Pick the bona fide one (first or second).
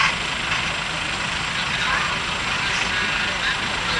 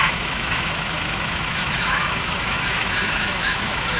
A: first